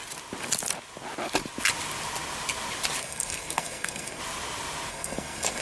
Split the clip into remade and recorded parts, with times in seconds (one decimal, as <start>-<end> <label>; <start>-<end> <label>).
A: 0.0-3.0 recorded; 3.0-4.2 remade; 4.2-4.9 recorded; 4.9-5.6 remade